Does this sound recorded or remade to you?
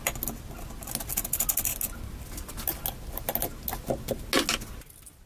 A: recorded